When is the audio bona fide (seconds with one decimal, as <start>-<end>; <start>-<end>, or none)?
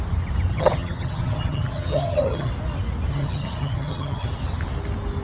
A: 0.0-0.5; 2.5-3.1; 4.3-5.2